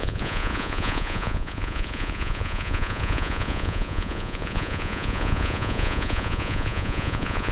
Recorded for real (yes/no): no